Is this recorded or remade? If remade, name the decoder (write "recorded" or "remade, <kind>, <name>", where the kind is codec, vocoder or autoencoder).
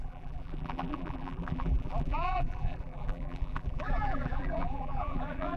remade, vocoder, BigVGAN v2